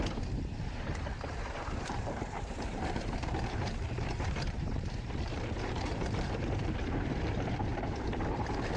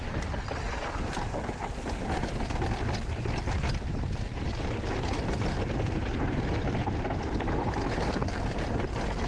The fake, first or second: first